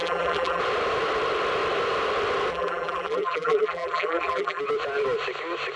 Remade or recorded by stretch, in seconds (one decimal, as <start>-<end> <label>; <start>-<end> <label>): 0.0-0.6 remade; 0.6-2.5 recorded; 2.5-4.6 remade; 4.6-5.8 recorded